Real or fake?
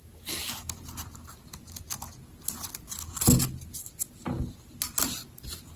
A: real